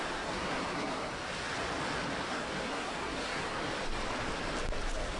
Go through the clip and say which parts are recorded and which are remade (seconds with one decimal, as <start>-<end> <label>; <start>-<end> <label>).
0.0-1.1 remade; 1.1-2.3 recorded; 2.3-3.6 remade; 3.6-5.2 recorded